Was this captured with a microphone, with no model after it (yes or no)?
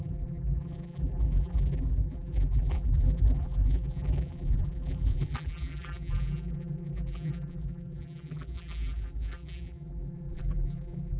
no